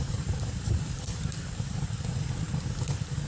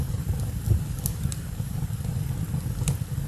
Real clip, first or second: second